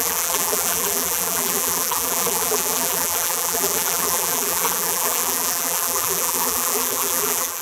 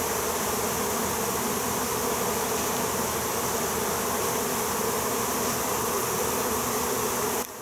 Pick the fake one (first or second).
first